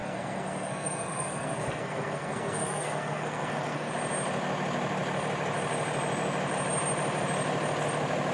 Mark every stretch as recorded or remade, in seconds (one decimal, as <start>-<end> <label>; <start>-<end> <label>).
0.0-3.9 remade; 3.9-8.3 recorded